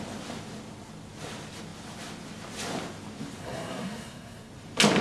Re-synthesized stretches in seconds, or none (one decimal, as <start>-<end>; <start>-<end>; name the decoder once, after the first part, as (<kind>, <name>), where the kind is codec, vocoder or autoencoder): 3.4-4.5 (codec, SNAC)

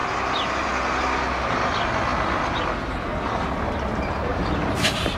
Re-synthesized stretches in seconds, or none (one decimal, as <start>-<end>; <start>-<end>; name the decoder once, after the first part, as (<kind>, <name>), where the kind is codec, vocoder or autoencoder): 0.0-0.7 (vocoder, BigVGAN v2); 4.3-5.2